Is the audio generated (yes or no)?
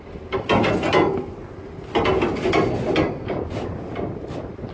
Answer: no